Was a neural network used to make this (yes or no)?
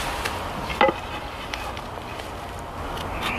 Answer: no